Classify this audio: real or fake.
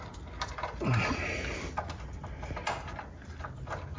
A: real